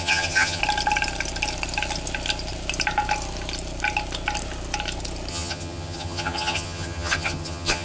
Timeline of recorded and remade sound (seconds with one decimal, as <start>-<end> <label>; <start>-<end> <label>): 0.0-0.6 remade; 0.6-5.3 recorded; 5.3-7.8 remade